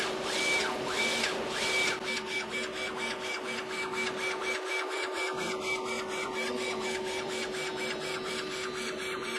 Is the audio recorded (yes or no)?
yes